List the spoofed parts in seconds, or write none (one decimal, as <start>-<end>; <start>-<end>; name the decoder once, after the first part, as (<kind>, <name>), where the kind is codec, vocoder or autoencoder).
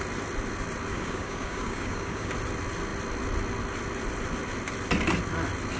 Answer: 0.9-2.3 (codec, DAC)